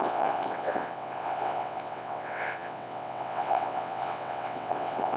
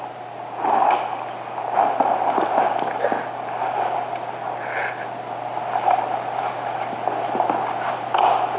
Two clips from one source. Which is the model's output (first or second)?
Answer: first